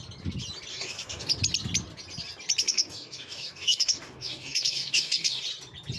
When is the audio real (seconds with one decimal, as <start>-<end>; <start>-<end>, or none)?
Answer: 0.0-0.7; 1.3-2.6; 5.4-6.0